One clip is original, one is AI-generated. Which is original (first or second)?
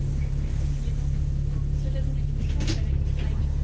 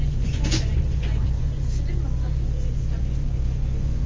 first